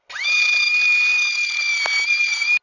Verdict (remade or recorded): recorded